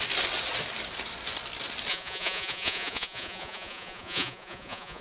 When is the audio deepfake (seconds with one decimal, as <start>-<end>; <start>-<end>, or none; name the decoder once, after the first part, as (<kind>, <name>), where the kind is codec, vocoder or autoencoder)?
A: 1.9-5.0 (vocoder, Vocos)